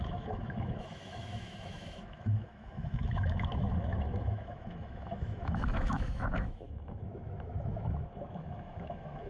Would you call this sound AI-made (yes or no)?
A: yes